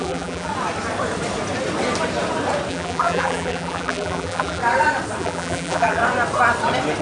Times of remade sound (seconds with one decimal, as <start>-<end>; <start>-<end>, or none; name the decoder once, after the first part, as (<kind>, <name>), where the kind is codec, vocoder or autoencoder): 0.0-0.5 (vocoder, BigVGAN v2); 2.7-4.6; 5.2-6.0